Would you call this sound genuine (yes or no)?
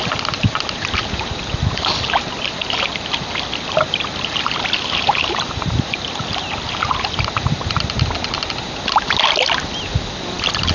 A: yes